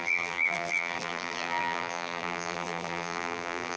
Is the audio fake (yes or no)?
yes